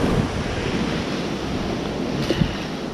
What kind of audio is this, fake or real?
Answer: real